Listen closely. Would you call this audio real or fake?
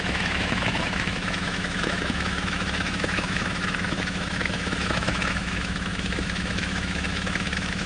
fake